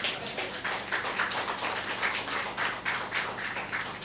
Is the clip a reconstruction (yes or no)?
no